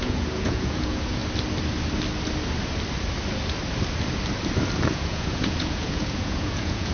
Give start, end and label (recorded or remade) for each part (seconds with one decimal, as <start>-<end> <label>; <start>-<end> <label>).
0.0-1.2 remade; 1.2-4.9 recorded; 4.9-6.9 remade